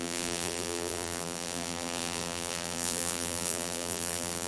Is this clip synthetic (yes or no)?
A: yes